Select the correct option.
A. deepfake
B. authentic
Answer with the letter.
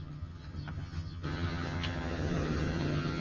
A